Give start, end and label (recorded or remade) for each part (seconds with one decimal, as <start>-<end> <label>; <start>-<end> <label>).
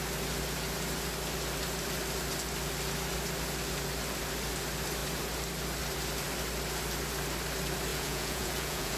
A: 0.0-7.9 recorded; 7.9-9.0 remade